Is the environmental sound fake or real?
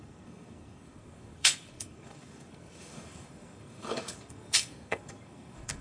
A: fake